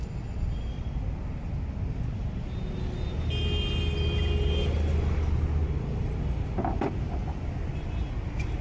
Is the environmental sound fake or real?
real